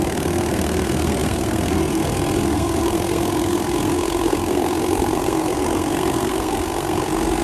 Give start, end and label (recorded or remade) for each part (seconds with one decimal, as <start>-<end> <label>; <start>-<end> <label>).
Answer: 0.0-7.4 remade